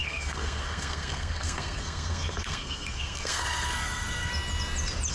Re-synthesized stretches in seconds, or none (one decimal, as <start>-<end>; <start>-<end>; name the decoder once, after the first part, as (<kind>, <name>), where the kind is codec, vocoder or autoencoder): 0.0-4.3 (codec, SNAC)

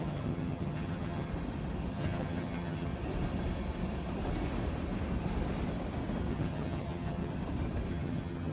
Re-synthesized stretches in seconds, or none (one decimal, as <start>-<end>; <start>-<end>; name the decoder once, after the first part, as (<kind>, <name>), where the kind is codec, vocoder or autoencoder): 0.0-1.3 (vocoder, HiFi-GAN); 1.9-2.9; 6.3-7.3; 7.9-8.5